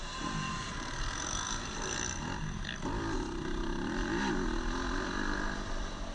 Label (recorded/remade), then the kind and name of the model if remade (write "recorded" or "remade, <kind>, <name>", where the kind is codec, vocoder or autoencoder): recorded